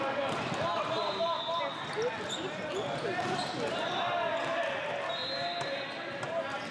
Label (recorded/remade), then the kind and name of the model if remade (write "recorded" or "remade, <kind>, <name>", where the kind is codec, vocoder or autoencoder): recorded